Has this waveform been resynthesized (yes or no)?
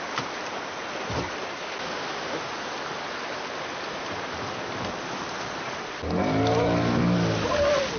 no